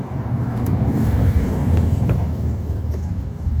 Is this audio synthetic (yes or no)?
yes